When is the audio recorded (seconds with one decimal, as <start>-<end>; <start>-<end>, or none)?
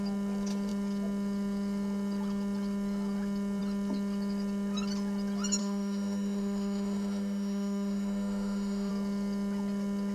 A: 0.0-5.6; 8.9-10.1